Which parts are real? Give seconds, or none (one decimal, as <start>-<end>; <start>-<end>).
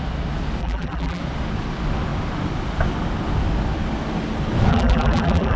0.0-0.6; 1.2-4.7